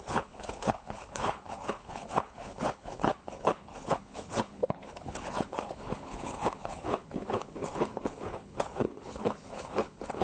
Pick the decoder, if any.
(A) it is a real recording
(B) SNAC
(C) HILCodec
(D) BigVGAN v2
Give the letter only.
C